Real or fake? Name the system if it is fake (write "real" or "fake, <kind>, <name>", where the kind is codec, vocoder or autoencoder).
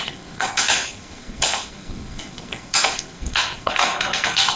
fake, codec, SNAC